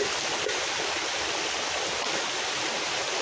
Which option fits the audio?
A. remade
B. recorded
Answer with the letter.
B